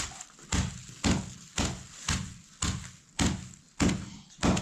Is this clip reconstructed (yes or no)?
no